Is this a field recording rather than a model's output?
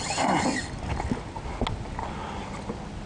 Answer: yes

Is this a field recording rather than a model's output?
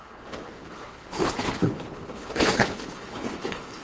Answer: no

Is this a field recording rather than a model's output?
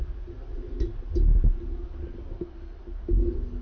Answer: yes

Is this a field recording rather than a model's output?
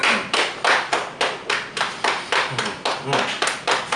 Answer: yes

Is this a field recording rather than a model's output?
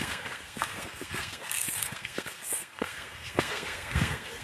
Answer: no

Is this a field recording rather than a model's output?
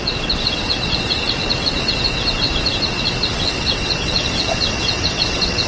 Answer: no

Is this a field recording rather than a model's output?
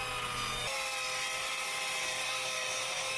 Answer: yes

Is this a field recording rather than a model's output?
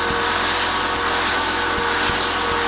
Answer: yes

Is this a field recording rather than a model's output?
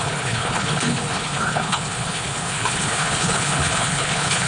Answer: no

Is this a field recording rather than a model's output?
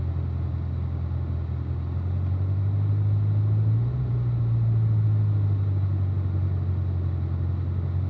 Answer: yes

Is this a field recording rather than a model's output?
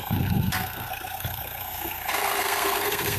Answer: no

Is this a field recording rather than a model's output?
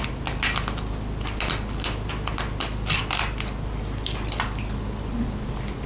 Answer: yes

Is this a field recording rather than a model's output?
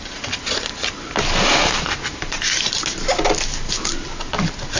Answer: yes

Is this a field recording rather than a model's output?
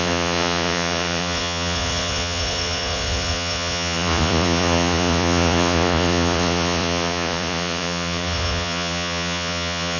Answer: no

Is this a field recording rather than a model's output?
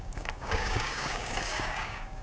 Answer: no